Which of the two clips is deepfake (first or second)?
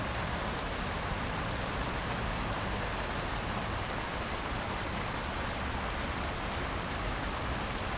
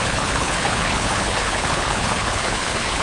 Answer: second